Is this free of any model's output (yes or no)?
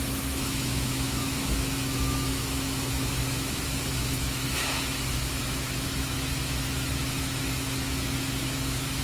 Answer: no